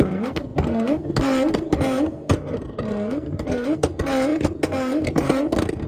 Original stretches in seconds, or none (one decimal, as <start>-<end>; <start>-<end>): none